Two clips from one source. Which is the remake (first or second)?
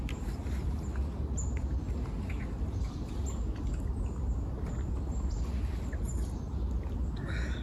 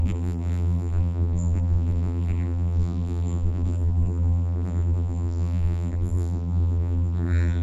second